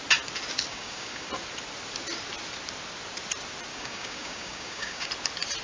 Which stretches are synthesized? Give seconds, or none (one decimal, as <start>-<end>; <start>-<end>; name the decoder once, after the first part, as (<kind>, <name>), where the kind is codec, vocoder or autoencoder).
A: 0.7-1.3 (codec, DAC); 3.7-5.1